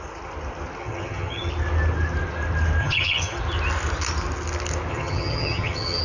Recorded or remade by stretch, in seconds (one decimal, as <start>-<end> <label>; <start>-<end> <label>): 0.0-0.8 recorded; 0.8-1.5 remade; 1.5-2.8 recorded; 2.8-3.4 remade; 3.4-4.9 recorded; 4.9-6.0 remade